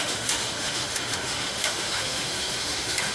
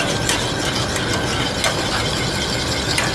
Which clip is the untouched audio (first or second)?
second